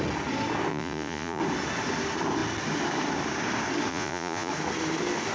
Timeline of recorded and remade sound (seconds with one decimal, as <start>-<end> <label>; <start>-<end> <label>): 0.0-0.7 recorded; 0.7-1.4 remade; 1.4-3.9 recorded; 3.9-4.5 remade; 4.5-5.3 recorded